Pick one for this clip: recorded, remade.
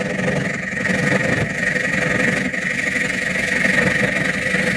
recorded